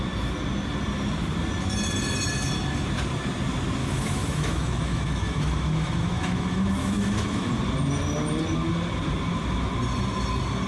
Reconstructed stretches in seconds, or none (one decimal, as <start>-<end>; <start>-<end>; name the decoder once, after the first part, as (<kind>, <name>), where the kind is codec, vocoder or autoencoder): 3.8-7.5 (autoencoder, DAC-VAE)